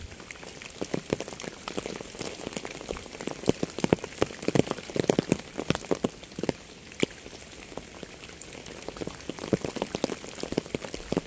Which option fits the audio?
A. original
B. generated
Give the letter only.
A